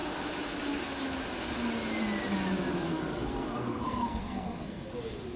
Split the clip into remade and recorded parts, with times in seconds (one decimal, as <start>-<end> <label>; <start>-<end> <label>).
0.0-2.9 recorded; 2.9-4.9 remade; 4.9-5.4 recorded